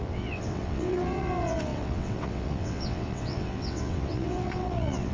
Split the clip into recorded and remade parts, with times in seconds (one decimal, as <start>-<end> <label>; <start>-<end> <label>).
0.0-5.1 remade